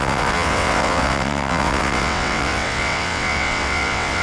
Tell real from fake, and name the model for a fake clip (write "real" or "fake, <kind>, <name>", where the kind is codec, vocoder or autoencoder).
fake, vocoder, WaveNeXt